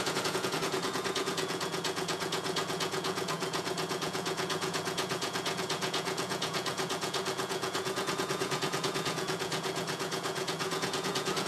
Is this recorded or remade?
remade